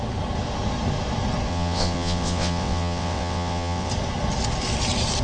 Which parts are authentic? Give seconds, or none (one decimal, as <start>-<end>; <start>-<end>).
0.0-1.5; 3.9-5.2